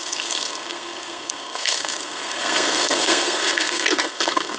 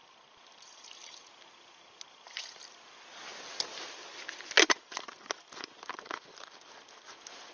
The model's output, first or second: first